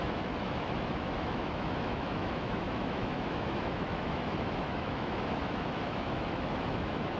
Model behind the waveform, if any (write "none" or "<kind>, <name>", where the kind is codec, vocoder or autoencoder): autoencoder, DAC-VAE